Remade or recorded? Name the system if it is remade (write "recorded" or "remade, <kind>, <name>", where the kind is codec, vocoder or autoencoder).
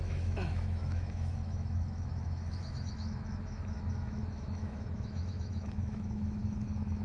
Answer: remade, autoencoder, DAC-VAE